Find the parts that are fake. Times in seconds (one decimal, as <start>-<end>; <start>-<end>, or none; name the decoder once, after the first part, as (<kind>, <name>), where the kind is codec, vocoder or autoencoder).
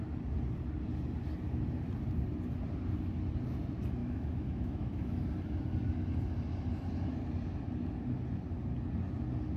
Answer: 4.0-5.2 (autoencoder, DAC-VAE)